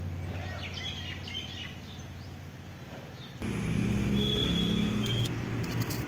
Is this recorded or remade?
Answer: recorded